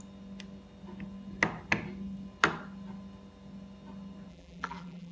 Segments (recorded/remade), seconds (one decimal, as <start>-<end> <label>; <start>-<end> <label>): 0.0-4.3 recorded; 4.3-5.1 remade